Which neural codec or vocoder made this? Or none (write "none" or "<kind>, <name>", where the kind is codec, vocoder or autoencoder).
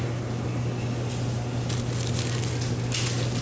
none